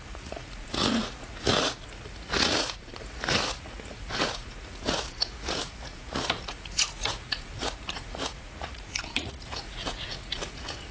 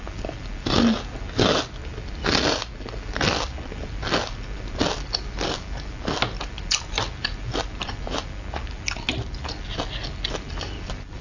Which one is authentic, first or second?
second